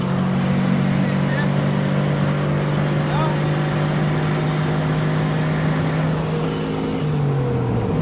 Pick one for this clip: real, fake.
real